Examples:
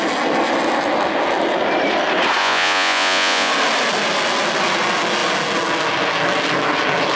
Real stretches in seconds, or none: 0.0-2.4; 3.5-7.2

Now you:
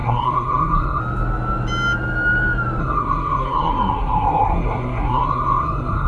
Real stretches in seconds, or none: 1.0-2.8

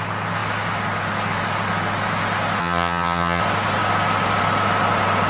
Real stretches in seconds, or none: 0.0-2.6; 3.4-5.3

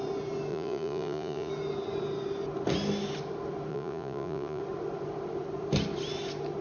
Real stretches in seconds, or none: 0.0-0.5; 1.5-3.7; 4.6-6.6

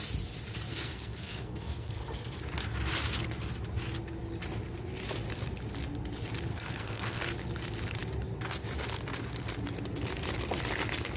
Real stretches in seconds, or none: 0.0-0.7; 2.4-6.5; 7.2-11.2

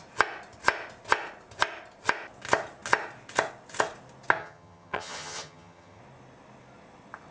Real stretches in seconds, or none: 0.0-4.4; 6.0-7.3